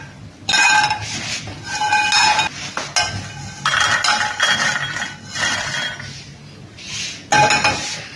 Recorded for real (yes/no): yes